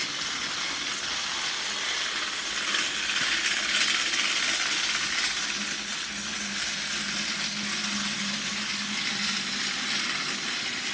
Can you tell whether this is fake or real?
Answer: real